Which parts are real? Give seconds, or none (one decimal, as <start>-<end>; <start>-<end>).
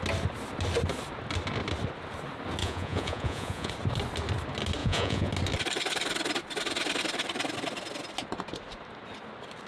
0.0-2.6; 3.7-4.8; 5.3-9.7